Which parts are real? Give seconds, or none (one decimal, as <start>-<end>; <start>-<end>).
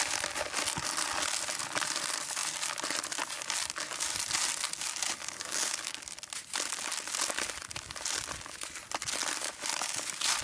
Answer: 0.0-5.2; 6.0-10.4